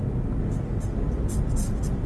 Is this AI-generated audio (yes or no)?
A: no